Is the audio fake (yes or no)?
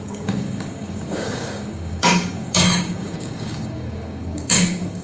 yes